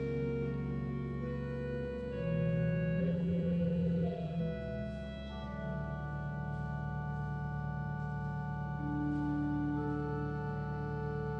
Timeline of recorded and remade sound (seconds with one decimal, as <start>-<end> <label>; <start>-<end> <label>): 0.0-3.0 recorded; 3.0-4.4 remade; 4.4-11.4 recorded